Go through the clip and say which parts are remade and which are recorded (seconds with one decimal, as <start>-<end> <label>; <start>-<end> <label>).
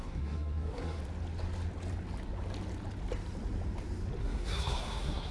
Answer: 0.0-1.0 remade; 1.0-4.2 recorded; 4.2-5.3 remade